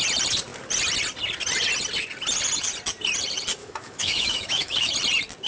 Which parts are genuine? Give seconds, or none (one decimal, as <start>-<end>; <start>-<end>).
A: 0.0-3.6; 4.9-5.5